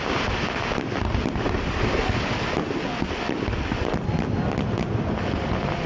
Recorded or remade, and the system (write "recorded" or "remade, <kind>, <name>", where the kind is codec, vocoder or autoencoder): recorded